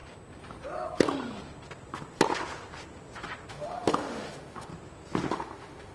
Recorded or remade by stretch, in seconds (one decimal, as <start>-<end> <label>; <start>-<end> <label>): 0.0-3.5 recorded; 3.5-4.7 remade; 4.7-5.3 recorded; 5.3-5.9 remade